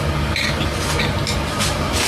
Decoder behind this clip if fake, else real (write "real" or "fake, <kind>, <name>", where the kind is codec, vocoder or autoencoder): real